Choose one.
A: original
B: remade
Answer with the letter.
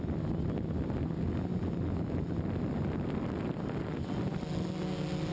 A